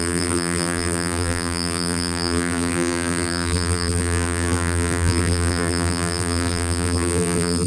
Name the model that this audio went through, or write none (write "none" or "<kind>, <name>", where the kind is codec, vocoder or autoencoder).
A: vocoder, BigVGAN v2